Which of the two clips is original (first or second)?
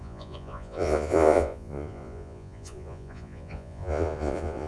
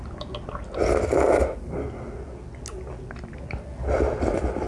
second